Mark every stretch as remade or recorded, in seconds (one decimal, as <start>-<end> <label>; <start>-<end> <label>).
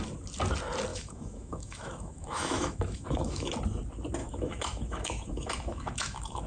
0.0-0.9 recorded; 0.9-3.5 remade; 3.5-4.2 recorded; 4.2-6.5 remade